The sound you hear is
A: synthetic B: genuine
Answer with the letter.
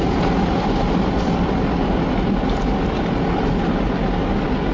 B